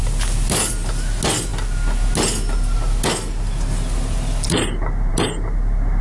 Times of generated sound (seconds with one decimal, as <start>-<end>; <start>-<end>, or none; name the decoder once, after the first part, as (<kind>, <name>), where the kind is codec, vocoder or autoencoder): none